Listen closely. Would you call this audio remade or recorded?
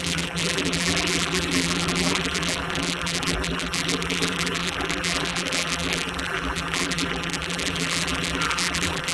remade